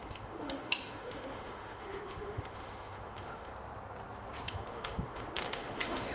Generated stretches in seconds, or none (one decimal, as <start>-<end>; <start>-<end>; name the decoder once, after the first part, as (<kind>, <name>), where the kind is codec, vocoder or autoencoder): 0.0-3.5 (autoencoder, DAC-VAE); 4.5-6.1